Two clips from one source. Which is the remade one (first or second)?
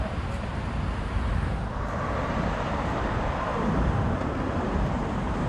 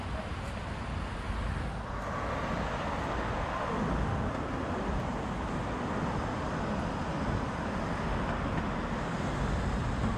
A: first